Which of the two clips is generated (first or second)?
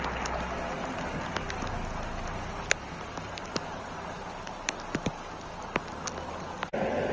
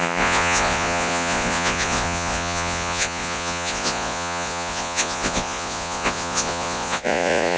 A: second